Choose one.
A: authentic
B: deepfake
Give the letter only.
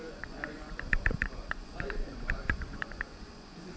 B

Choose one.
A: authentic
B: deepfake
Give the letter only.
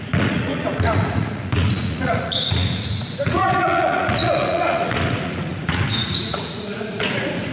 B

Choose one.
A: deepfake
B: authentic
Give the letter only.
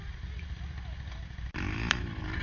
B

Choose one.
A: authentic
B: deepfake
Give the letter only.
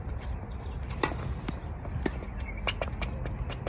A